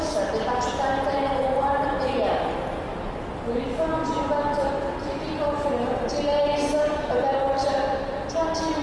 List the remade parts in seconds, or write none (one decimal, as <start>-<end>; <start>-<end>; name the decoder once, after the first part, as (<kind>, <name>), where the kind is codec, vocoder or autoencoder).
4.0-4.7 (vocoder, BigVGAN v2); 7.6-8.4